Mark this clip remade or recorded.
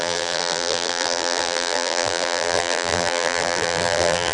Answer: remade